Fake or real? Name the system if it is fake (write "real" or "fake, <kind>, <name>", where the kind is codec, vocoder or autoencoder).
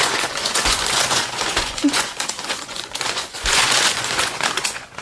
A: fake, vocoder, Vocos